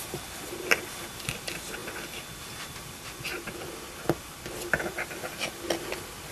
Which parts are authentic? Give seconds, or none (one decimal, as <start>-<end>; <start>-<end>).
0.0-6.3